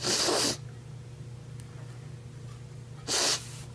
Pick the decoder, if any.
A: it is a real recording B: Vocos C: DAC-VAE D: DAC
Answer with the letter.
A